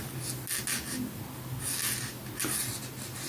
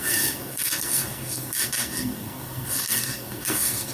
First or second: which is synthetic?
second